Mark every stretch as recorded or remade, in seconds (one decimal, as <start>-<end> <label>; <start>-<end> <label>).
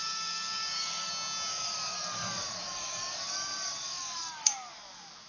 0.0-1.1 remade; 1.1-1.5 recorded; 1.5-4.7 remade; 4.7-5.3 recorded